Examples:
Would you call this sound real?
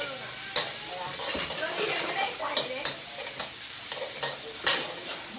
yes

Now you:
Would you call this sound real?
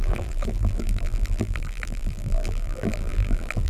no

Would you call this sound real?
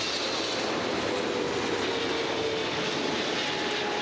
yes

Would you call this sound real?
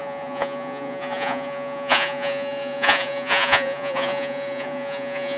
no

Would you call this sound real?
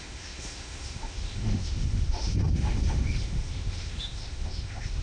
no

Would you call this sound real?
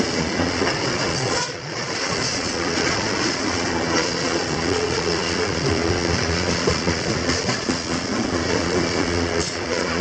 no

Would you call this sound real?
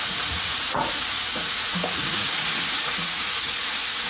no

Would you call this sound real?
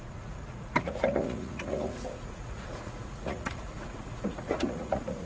no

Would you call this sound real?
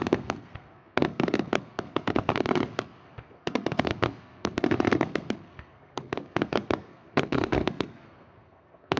no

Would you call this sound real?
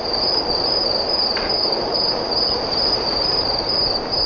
no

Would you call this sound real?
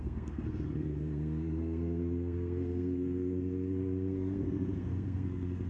no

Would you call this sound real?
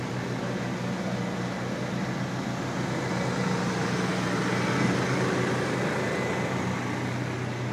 yes